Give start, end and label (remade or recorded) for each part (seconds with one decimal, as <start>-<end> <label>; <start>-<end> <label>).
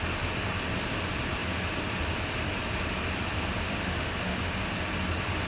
0.0-3.6 recorded; 3.6-4.7 remade; 4.7-5.5 recorded